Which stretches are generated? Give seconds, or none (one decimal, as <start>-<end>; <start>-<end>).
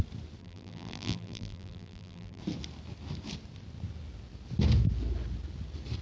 0.4-2.4